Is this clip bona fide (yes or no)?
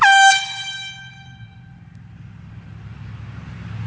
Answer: yes